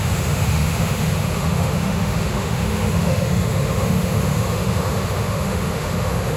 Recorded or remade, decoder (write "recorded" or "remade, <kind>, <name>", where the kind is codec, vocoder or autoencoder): remade, autoencoder, DAC-VAE